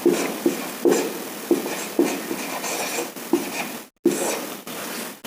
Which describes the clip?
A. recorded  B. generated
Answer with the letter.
A